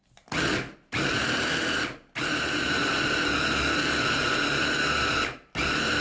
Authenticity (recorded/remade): recorded